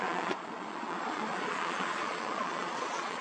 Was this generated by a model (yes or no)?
yes